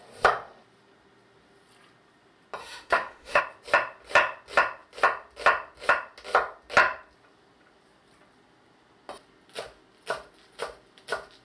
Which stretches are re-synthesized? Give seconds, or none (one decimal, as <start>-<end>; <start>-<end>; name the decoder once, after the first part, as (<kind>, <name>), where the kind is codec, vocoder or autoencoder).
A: 2.6-3.4 (autoencoder, DAC-VAE)